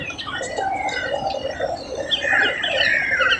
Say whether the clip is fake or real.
real